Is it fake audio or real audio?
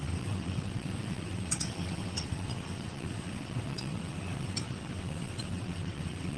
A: fake